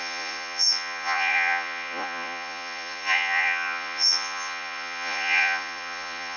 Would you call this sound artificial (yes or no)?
yes